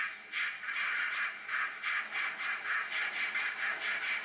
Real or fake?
real